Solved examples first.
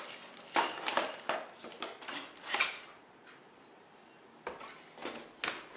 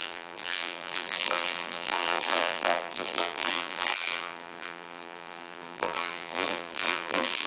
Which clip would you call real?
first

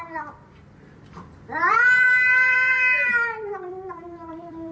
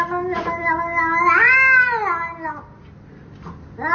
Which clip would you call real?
second